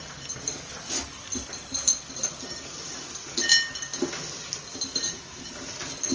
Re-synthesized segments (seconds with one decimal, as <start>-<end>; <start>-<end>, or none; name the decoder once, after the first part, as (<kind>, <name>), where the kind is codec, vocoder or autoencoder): none